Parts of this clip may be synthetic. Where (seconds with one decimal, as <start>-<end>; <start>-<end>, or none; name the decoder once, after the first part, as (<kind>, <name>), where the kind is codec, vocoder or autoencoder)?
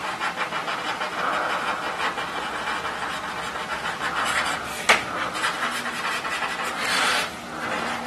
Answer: 0.0-1.2 (vocoder, BigVGAN v2); 3.7-6.1